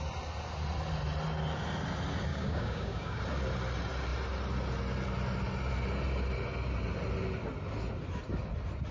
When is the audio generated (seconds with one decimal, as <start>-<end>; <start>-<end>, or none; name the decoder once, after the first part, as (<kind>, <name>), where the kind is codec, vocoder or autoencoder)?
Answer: 2.3-3.2 (codec, DAC)